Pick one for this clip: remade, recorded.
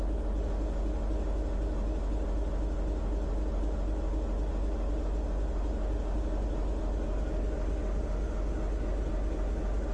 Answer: recorded